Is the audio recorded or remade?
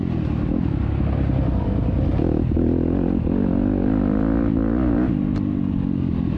recorded